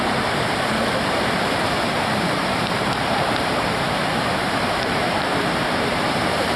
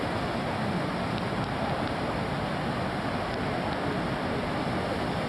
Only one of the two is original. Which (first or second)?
second